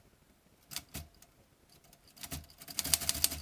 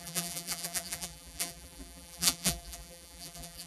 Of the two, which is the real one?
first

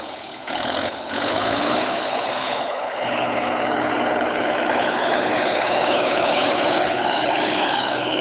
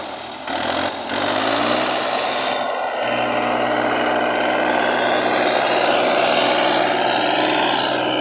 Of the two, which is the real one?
second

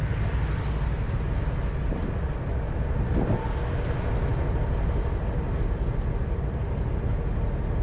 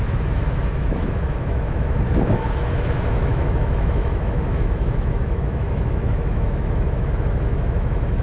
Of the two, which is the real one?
first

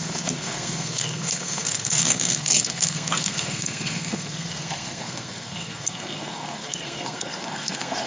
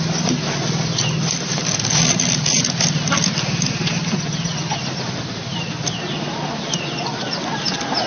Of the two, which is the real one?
second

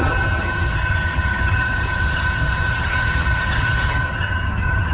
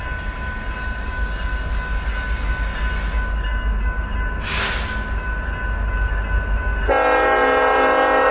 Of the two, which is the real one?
second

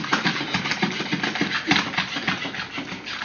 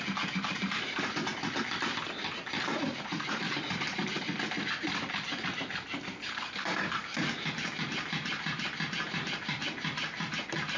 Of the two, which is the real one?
first